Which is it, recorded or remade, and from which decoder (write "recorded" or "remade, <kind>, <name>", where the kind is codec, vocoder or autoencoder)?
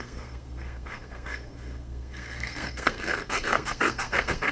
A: remade, codec, SNAC